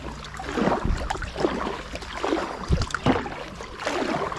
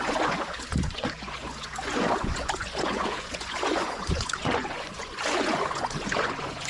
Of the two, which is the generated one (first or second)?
second